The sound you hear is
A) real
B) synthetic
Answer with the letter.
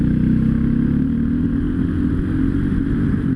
A